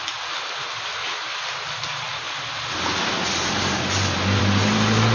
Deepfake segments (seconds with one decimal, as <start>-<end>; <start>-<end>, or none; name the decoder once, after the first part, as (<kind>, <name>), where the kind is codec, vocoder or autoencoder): none